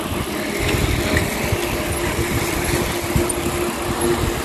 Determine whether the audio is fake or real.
real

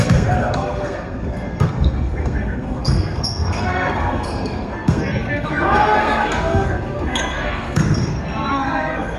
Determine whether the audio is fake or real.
fake